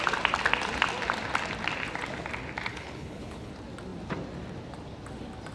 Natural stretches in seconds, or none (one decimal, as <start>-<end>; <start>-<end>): 0.0-2.7; 3.5-5.5